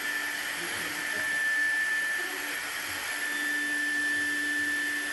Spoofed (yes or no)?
no